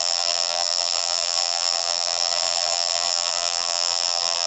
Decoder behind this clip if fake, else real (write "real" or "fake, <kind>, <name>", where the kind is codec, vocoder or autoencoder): fake, vocoder, BigVGAN v2